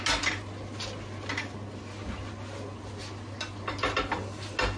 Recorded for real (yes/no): yes